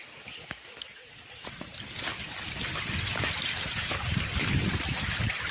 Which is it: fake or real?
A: real